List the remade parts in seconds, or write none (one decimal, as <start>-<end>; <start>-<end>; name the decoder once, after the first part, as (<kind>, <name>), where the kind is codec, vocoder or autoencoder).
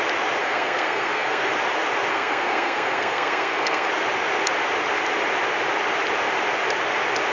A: 0.4-1.5 (codec, SNAC); 2.1-3.9